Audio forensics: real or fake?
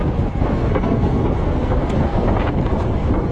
fake